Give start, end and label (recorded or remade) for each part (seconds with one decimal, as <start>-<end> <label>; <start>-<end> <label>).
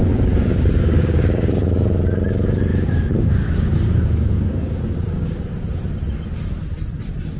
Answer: 0.0-1.5 remade; 1.5-2.7 recorded; 2.7-5.4 remade; 5.4-7.4 recorded